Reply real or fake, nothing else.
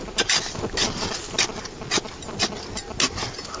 real